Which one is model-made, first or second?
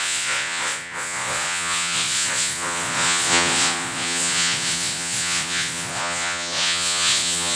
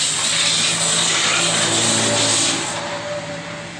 first